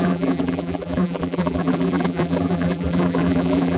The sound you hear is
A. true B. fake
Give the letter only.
B